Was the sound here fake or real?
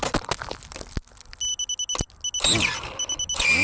real